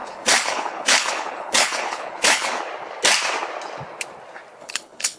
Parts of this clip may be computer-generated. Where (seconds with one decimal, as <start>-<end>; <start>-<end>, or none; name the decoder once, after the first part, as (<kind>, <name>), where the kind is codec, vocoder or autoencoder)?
0.0-2.6 (codec, HILCodec); 4.6-5.2